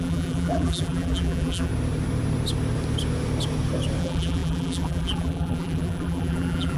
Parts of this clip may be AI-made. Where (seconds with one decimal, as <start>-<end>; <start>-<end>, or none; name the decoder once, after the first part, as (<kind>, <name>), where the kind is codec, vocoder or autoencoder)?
0.0-1.7 (vocoder, BigVGAN v2); 4.0-6.8